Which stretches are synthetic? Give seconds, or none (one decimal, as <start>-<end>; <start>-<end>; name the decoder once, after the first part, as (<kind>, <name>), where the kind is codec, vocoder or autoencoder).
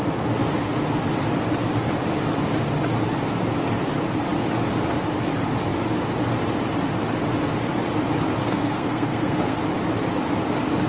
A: 8.4-9.6 (codec, SNAC)